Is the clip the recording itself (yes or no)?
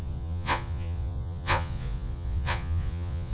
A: no